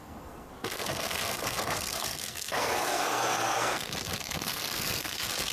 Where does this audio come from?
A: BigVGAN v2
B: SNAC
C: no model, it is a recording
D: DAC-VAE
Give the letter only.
B